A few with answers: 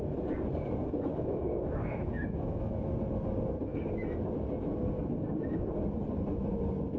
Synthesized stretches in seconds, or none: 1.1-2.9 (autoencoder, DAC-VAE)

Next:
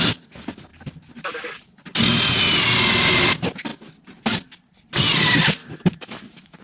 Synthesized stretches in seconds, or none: 5.6-6.6 (autoencoder, DAC-VAE)

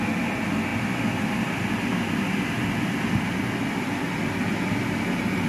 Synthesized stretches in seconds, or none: none

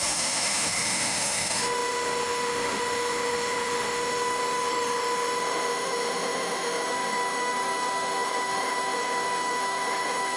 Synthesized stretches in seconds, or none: 0.0-10.4 (autoencoder, DAC-VAE)

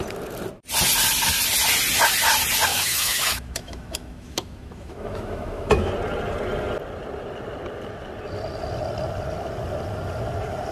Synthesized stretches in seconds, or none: 2.7-5.9 (autoencoder, DAC-VAE)

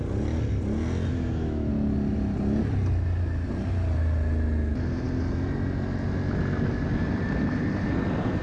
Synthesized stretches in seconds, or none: 1.1-1.7 (autoencoder, DAC-VAE)

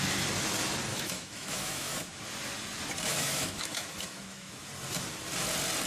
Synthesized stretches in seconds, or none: 0.9-2.2 (autoencoder, DAC-VAE); 3.1-4.7

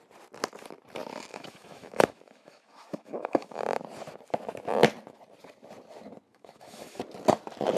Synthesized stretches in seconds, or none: 1.3-3.6 (autoencoder, DAC-VAE); 6.3-7.0